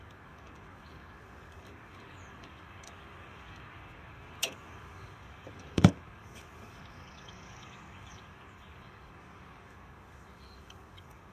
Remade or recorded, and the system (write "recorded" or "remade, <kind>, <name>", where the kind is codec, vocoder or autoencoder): remade, codec, DAC